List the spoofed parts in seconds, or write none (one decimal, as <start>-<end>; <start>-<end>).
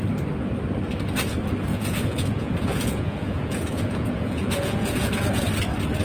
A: 1.7-5.3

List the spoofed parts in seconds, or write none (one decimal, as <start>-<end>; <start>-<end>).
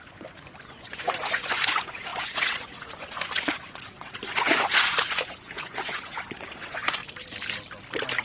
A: 0.0-7.0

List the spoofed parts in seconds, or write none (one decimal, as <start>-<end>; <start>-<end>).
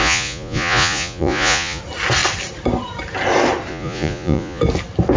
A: 0.0-1.8; 3.7-4.6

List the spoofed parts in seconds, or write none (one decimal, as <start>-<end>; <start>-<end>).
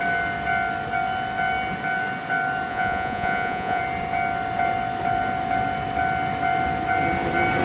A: 2.7-3.8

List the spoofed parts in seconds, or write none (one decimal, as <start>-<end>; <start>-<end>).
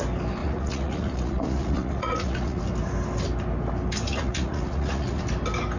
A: 0.4-2.6; 4.1-5.2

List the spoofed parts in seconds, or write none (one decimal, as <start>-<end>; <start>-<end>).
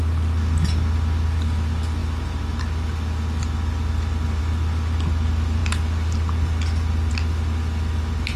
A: none